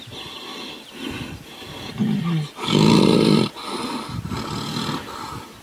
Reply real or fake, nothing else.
fake